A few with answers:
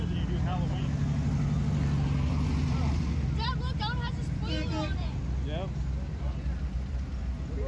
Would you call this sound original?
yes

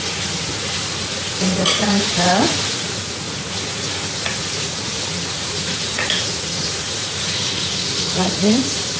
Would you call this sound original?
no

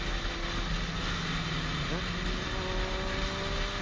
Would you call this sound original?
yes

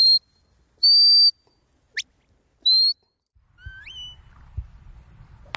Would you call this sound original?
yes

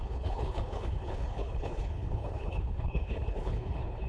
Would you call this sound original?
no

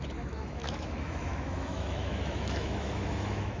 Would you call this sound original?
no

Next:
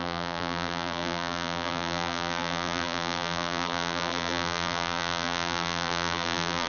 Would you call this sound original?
no